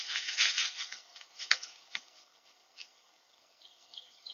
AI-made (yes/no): yes